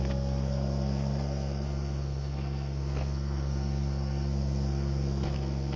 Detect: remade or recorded remade